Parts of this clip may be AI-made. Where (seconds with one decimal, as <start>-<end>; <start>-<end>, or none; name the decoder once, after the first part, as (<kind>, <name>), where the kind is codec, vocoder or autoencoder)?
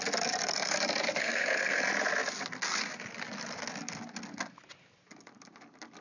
1.2-1.8 (codec, SNAC)